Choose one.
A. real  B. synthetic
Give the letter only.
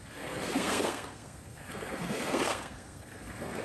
B